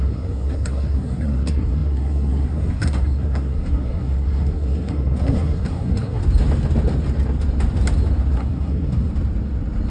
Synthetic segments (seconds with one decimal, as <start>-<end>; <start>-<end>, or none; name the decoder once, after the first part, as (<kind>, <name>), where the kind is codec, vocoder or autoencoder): 0.0-6.2 (codec, SNAC); 8.3-9.1

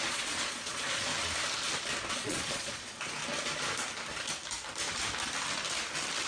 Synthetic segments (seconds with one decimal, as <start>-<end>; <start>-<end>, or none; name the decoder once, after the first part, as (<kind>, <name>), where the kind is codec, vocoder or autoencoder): 0.0-1.1 (vocoder, Vocos); 2.1-3.2

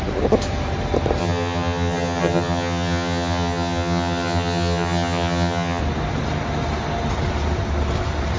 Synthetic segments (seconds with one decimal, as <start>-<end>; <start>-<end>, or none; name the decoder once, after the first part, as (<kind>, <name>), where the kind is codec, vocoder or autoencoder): 1.2-5.8 (vocoder, HiFi-GAN)